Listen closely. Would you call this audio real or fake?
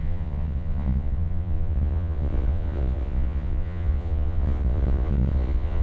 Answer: fake